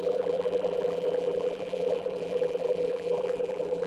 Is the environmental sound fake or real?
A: fake